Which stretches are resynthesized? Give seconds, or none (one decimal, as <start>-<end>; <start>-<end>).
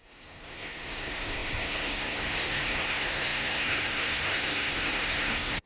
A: 0.0-5.7